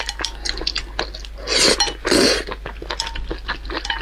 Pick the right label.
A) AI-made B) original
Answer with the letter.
B